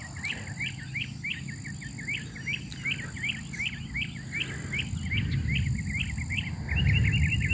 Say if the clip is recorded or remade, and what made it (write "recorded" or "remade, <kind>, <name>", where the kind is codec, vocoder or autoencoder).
recorded